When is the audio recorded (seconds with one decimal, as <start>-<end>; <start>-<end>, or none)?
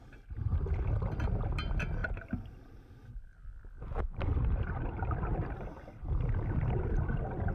0.0-2.0; 2.8-5.3; 6.0-7.5